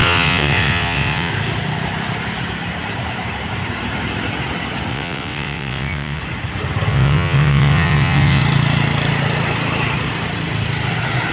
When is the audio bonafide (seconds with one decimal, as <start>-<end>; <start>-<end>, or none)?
1.3-4.9; 6.2-6.9; 8.4-11.3